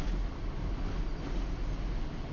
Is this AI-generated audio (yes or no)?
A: no